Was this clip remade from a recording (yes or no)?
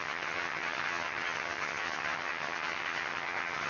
yes